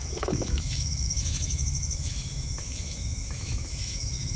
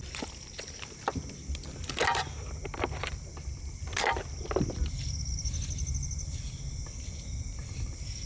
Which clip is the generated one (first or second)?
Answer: first